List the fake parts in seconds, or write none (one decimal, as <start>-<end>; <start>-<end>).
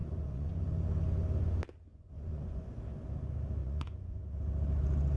0.0-0.5; 1.9-2.8; 3.6-4.2